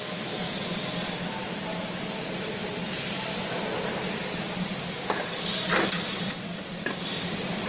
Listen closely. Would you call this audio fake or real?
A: fake